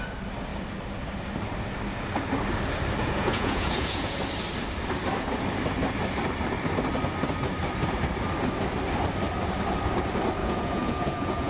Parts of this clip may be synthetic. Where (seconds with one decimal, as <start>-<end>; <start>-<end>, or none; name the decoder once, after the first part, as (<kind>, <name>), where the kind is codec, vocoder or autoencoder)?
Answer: 3.0-4.2 (vocoder, Vocos); 10.4-11.5